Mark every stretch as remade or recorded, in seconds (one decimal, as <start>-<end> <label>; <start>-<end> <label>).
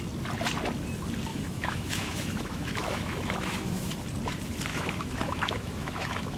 0.0-1.3 recorded; 1.3-3.9 remade; 3.9-4.7 recorded; 4.7-6.4 remade